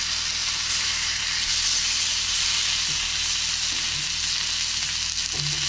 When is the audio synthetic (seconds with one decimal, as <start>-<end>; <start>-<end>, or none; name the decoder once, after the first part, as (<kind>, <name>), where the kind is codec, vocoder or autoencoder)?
0.4-1.2 (vocoder, BigVGAN v2)